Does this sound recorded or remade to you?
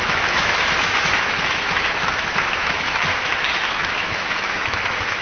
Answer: remade